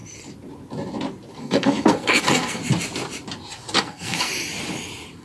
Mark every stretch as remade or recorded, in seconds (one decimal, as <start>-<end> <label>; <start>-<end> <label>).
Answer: 0.0-1.3 recorded; 1.3-2.6 remade; 2.6-3.8 recorded; 3.8-4.3 remade; 4.3-5.2 recorded